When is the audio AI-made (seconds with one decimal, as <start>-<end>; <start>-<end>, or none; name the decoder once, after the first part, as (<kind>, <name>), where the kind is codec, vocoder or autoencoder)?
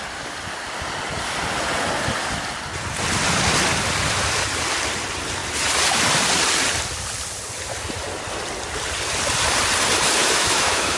10.2-11.0 (autoencoder, DAC-VAE)